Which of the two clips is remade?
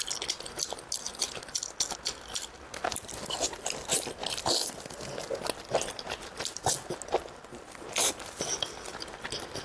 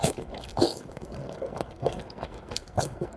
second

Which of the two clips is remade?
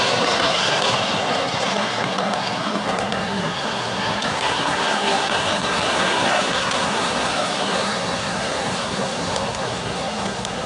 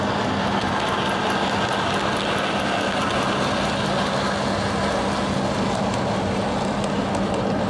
first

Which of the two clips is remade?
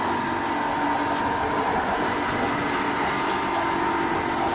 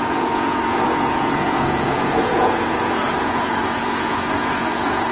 second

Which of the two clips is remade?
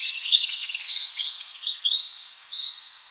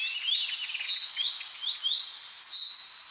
first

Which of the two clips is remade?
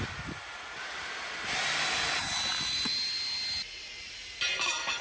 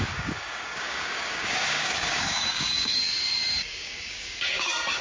second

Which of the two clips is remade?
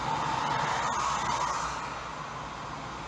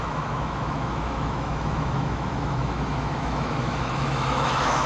second